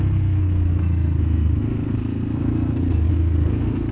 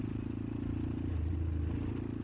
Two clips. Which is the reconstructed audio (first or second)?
first